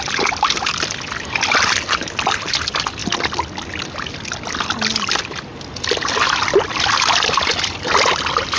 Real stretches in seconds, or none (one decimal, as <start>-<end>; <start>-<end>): 0.0-8.6